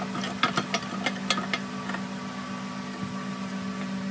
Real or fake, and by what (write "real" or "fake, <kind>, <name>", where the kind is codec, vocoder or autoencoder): real